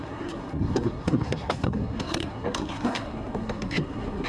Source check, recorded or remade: remade